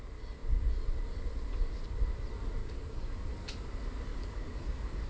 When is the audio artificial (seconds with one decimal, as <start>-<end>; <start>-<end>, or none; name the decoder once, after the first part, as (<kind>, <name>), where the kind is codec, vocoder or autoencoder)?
2.6-3.3 (codec, DAC); 4.1-5.1